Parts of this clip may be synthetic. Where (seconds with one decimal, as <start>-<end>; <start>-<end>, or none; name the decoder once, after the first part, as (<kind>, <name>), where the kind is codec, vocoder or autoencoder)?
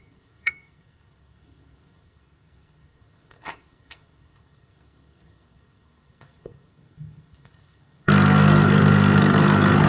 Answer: 0.0-9.9 (codec, SNAC)